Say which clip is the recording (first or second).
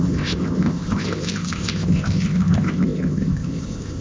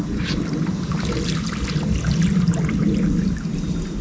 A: second